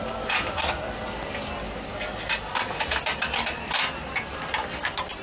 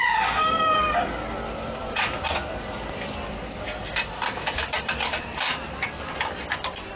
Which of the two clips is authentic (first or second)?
first